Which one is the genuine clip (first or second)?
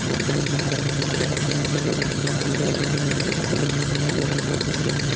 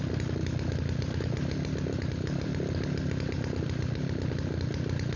second